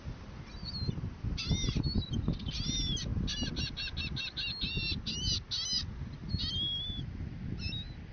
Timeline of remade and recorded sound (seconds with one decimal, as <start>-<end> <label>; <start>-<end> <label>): 0.0-8.1 recorded